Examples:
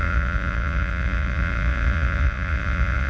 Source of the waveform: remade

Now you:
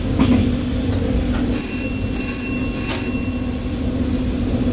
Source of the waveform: recorded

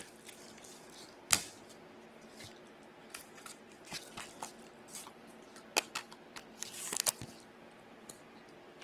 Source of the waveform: recorded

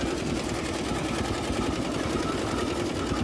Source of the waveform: recorded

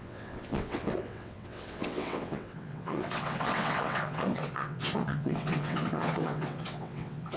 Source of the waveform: remade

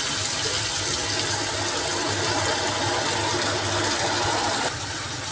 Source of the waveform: recorded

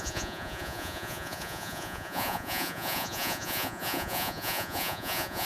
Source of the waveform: remade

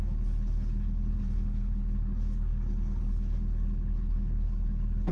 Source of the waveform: remade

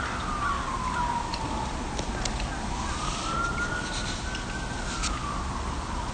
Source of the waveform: recorded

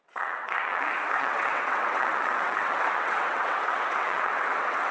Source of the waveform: remade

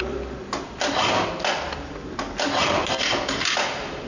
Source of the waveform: recorded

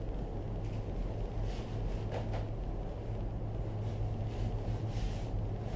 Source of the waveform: recorded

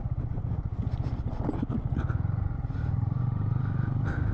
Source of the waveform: recorded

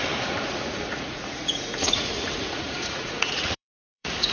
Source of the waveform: remade